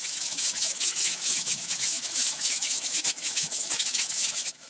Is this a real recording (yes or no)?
no